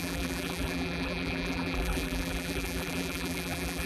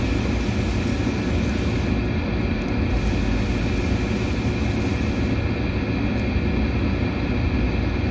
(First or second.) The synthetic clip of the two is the first